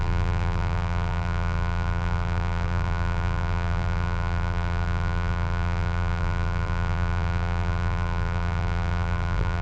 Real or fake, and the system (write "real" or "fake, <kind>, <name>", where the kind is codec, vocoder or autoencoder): fake, vocoder, BigVGAN v2